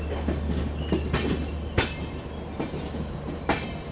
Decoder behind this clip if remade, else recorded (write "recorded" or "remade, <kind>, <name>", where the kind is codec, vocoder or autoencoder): recorded